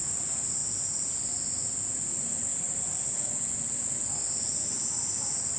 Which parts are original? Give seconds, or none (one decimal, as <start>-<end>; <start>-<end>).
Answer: 0.0-5.6

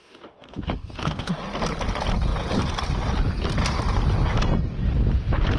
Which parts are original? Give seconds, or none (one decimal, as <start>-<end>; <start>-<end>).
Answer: 1.3-5.6

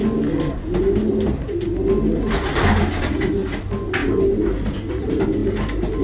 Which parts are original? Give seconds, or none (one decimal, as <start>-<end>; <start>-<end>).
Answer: 0.0-6.0

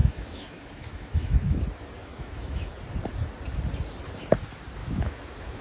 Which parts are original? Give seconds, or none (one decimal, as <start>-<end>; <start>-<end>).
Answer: 1.6-2.1; 2.7-4.8

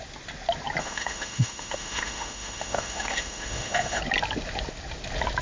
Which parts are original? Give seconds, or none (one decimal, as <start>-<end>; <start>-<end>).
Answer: 0.0-0.8; 4.0-5.4

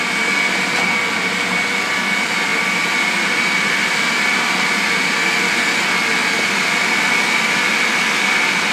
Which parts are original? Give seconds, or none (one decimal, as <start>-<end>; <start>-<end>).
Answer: 0.0-8.7

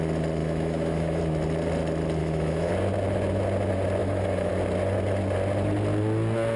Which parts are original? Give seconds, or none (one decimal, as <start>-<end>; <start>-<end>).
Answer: 0.0-0.4; 1.2-2.2; 2.7-4.0; 4.5-6.6

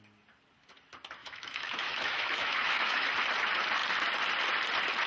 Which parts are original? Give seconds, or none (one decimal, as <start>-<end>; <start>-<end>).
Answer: 0.0-1.2; 3.1-5.1